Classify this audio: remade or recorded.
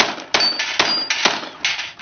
recorded